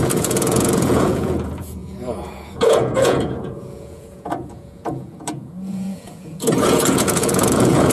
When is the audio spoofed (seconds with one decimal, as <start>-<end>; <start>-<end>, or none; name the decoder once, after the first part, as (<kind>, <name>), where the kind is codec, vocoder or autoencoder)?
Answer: 0.0-7.9 (vocoder, Vocos)